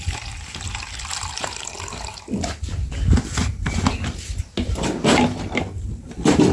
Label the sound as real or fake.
real